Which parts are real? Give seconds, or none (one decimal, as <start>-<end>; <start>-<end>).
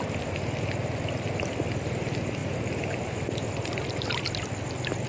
0.0-5.1